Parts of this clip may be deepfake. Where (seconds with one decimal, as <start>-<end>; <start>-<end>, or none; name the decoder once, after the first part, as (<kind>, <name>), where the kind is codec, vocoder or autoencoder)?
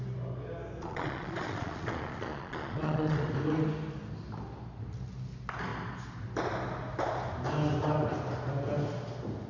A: 0.8-3.3 (vocoder, Vocos)